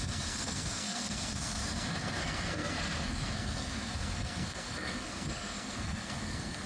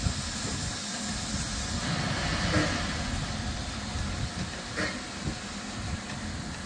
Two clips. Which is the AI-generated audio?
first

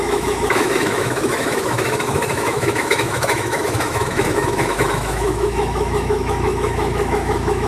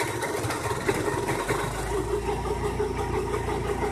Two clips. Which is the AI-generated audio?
first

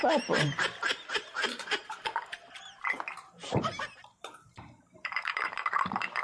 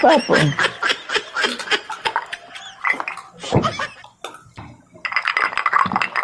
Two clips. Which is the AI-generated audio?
first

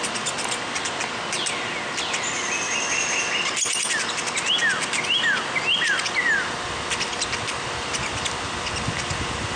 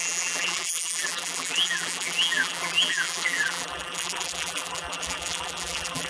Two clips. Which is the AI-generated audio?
second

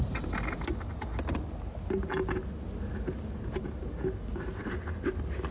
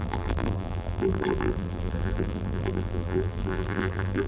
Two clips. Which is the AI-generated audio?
second